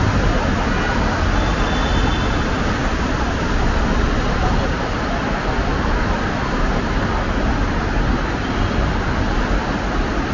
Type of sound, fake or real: real